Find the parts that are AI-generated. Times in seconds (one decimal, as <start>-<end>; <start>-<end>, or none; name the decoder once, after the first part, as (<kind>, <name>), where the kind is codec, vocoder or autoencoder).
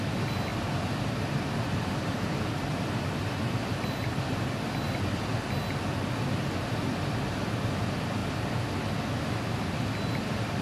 0.5-5.3 (vocoder, BigVGAN v2)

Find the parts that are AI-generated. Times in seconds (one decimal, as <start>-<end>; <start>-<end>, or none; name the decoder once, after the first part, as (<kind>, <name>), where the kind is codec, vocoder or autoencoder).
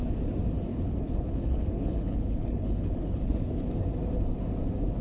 0.7-3.7 (codec, HILCodec)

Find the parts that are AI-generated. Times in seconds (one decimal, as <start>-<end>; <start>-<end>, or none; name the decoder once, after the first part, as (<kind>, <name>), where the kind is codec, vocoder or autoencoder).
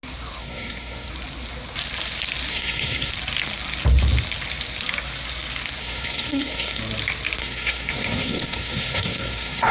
0.4-1.1 (codec, SNAC); 2.5-3.1; 5.8-6.8; 7.4-9.7